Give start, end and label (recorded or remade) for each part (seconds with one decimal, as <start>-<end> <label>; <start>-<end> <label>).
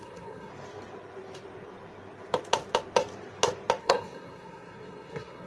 0.0-0.5 remade; 0.5-3.8 recorded; 3.8-5.5 remade